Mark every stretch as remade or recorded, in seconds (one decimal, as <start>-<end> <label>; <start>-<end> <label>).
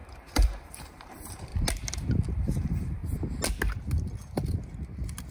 0.0-1.5 remade; 1.5-2.3 recorded; 2.3-3.0 remade; 3.0-5.3 recorded